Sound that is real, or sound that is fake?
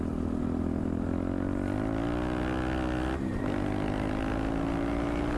real